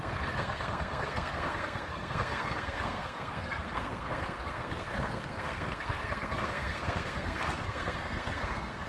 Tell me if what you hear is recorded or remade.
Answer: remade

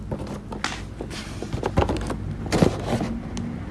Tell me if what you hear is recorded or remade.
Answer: recorded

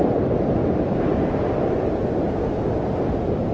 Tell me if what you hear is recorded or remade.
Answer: recorded